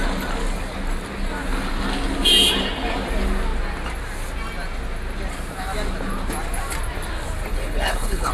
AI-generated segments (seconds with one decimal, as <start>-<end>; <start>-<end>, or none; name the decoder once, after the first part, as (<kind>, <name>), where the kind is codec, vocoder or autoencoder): 7.5-8.3 (codec, HILCodec)